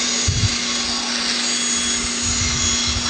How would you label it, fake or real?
real